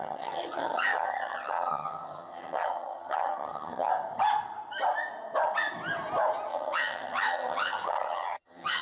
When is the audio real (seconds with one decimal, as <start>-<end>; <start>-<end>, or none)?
3.9-6.5